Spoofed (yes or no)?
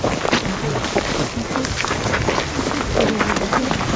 no